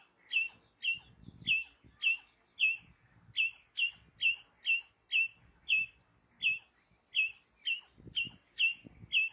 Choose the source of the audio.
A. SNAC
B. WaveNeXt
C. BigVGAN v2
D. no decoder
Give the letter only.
D